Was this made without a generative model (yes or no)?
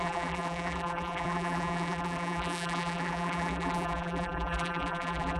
no